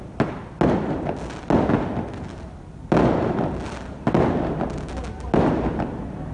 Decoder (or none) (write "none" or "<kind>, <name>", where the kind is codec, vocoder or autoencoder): none